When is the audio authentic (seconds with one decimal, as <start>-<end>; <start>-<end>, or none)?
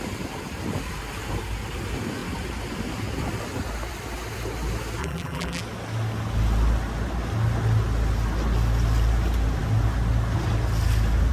0.0-5.0; 5.6-11.3